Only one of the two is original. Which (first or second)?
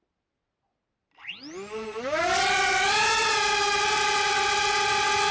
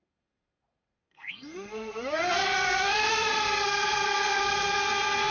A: first